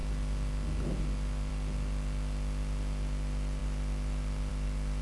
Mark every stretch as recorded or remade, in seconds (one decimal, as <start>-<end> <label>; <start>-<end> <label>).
0.0-5.0 recorded